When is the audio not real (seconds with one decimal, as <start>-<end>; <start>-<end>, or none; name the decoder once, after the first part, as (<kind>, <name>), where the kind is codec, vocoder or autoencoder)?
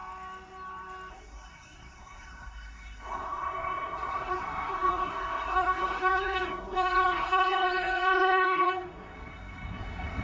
1.1-10.2 (codec, SNAC)